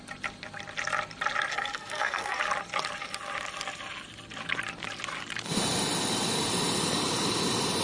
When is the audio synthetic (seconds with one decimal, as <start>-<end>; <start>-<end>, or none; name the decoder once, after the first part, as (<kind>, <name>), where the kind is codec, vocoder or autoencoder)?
1.5-2.4 (codec, SNAC)